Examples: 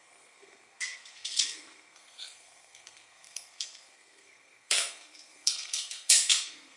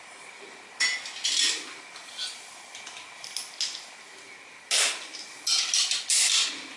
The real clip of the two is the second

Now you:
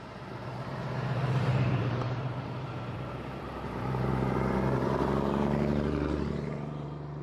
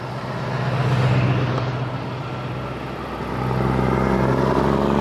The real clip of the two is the second